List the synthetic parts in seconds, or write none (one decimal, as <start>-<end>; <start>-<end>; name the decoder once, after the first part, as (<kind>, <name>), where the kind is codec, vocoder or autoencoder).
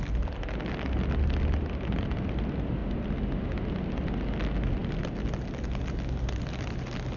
none